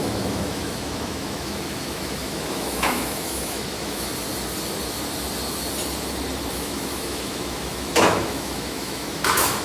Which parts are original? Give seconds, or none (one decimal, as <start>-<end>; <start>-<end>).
4.1-6.5